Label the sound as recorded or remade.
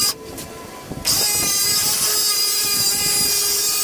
recorded